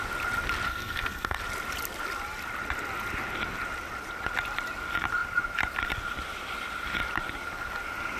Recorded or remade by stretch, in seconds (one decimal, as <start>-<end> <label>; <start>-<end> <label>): 0.0-0.7 recorded; 0.7-1.4 remade; 1.4-8.2 recorded